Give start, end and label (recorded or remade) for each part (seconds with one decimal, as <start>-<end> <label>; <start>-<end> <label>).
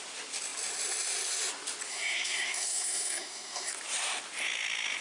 0.0-1.9 recorded; 1.9-3.7 remade; 3.7-5.0 recorded